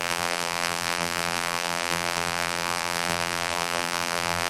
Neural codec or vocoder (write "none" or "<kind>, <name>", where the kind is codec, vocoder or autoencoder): vocoder, BigVGAN v2